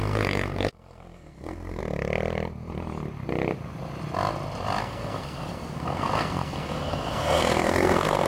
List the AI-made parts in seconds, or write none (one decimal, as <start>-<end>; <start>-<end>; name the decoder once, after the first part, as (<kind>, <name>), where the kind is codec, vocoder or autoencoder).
0.0-1.8 (codec, SNAC); 4.8-8.3